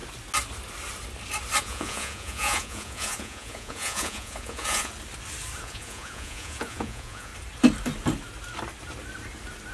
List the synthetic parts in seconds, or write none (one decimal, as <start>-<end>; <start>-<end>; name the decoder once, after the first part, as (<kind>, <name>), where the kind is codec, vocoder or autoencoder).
1.6-4.9 (vocoder, Vocos); 5.6-7.3